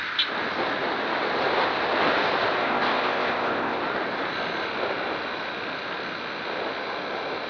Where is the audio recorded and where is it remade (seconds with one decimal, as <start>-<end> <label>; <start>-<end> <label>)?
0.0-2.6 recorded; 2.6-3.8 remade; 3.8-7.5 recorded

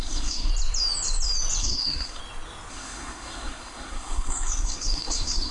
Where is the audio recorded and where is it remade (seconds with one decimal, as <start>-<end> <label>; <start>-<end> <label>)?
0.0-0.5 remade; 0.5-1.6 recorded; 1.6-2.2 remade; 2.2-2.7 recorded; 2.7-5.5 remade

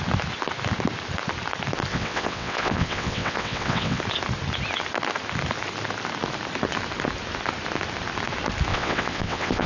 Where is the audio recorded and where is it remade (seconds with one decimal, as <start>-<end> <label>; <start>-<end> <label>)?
0.0-1.9 recorded; 1.9-4.0 remade; 4.0-8.7 recorded; 8.7-9.7 remade